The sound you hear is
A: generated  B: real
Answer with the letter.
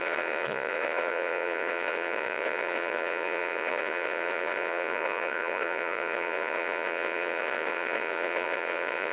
A